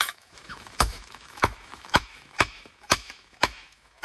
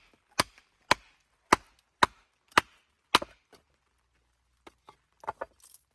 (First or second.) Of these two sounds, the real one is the second